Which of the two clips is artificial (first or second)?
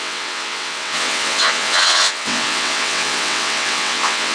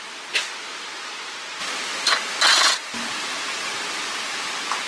first